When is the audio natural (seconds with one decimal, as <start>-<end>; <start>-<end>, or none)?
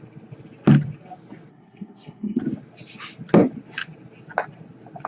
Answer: 0.0-1.5; 2.4-5.1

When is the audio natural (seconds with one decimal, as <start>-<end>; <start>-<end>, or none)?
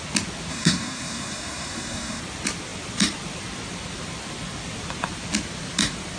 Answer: 0.0-0.5; 2.2-6.2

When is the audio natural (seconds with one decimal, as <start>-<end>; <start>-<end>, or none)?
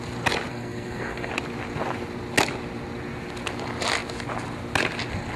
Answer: 0.0-0.5; 1.3-5.4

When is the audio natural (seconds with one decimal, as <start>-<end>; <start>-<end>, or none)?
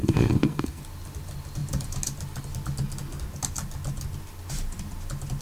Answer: 0.8-5.4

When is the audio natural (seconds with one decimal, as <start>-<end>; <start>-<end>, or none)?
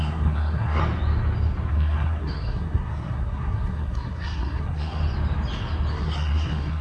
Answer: 0.8-1.7; 5.0-5.9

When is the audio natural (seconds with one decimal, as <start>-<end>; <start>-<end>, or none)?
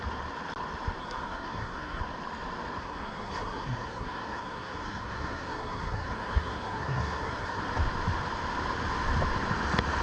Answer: 0.0-1.0; 2.0-2.8; 7.6-10.0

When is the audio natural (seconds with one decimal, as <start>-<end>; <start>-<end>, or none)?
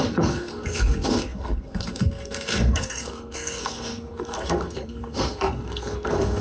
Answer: none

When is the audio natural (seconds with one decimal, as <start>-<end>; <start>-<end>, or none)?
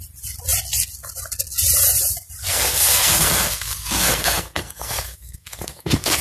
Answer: 0.0-2.4